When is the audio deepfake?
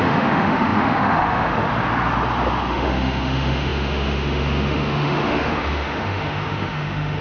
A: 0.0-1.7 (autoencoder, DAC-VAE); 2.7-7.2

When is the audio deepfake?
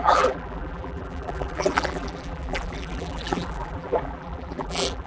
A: 0.0-5.1 (vocoder, BigVGAN v2)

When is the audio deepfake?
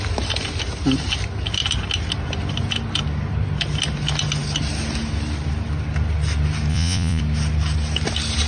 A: 6.7-7.2 (vocoder, Vocos)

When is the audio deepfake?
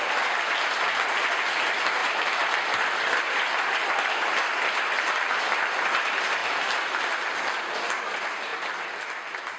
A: 2.0-6.0 (vocoder, BigVGAN v2)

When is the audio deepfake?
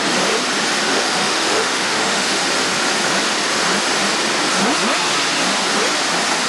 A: 0.9-2.4 (autoencoder, DAC-VAE)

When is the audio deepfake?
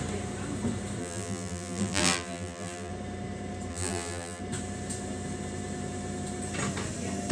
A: 1.0-2.9 (vocoder, BigVGAN v2); 3.7-4.4